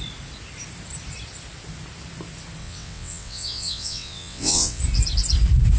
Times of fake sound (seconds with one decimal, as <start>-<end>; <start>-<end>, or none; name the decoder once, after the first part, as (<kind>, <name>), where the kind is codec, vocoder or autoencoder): 2.6-4.8 (vocoder, WaveNeXt)